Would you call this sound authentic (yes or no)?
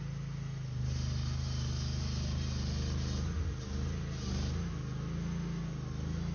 yes